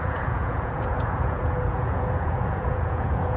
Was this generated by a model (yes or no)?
yes